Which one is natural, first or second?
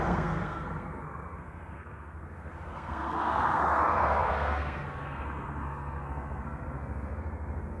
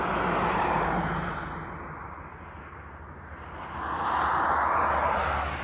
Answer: second